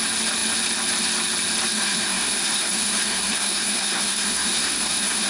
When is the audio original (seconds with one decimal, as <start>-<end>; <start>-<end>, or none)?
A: 0.0-1.7